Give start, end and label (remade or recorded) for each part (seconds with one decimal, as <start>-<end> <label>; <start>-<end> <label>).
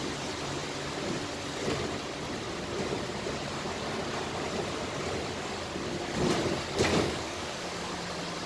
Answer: 0.0-6.9 recorded; 6.9-7.9 remade; 7.9-8.5 recorded